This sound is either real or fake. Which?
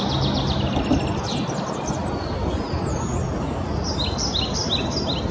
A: real